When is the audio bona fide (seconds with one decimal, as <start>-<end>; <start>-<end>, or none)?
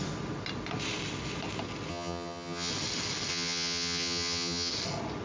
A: 0.0-1.9; 2.7-3.3; 4.7-5.2